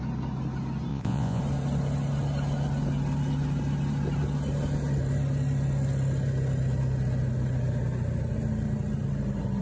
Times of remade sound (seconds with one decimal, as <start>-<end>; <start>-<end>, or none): 0.9-1.4